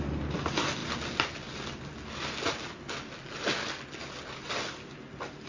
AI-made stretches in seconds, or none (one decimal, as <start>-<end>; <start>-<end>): none